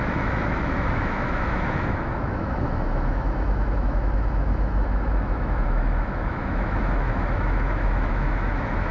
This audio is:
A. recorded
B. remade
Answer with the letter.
B